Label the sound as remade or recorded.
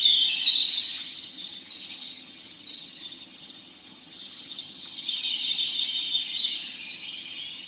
remade